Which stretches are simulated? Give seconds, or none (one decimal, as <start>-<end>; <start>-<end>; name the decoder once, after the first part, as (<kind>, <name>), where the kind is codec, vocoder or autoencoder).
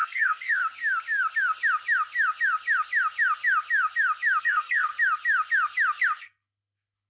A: 0.0-0.6 (codec, SNAC); 4.4-4.9; 6.2-7.1